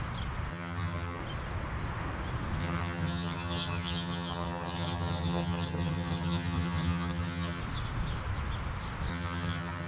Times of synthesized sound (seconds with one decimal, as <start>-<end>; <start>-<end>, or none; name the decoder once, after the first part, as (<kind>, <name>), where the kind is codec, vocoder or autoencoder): 0.5-1.2 (vocoder, HiFi-GAN); 2.6-7.6; 9.1-9.9